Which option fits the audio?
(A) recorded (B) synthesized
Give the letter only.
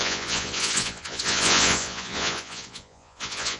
B